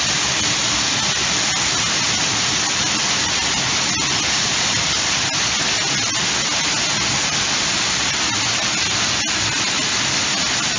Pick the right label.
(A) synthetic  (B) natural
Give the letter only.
B